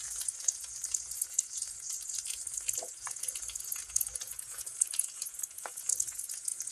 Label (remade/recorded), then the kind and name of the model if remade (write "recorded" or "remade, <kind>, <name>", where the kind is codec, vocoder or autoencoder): remade, vocoder, Vocos